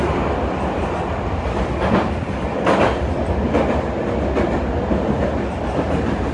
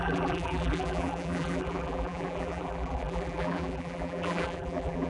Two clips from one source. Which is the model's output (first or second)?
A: second